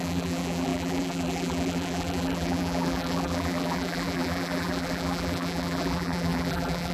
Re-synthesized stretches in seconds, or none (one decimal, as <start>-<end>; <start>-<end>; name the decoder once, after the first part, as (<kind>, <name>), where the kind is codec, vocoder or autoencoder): 0.0-6.9 (vocoder, BigVGAN v2)